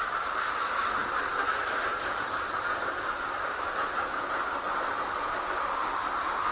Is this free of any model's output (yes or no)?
yes